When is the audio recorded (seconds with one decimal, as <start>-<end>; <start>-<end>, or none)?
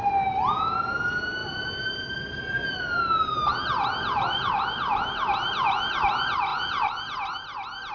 0.0-7.9